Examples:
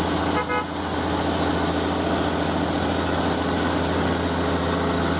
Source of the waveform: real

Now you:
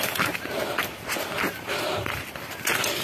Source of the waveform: real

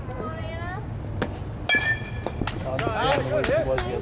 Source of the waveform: real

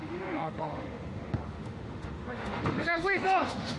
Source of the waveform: fake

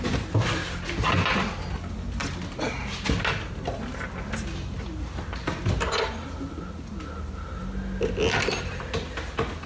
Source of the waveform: real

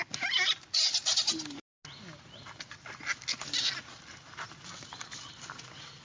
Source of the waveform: real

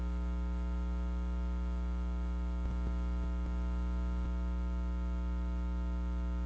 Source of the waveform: real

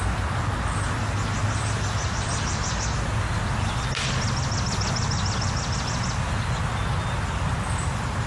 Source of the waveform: real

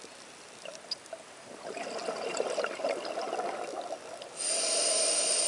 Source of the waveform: real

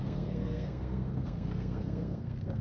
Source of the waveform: fake